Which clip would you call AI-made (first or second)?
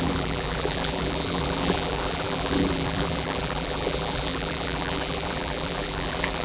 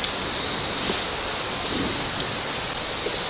first